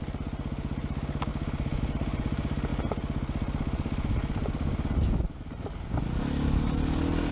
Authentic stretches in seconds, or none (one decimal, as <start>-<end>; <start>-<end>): 0.0-7.3